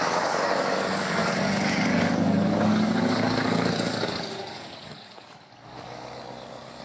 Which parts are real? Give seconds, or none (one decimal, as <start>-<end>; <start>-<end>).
none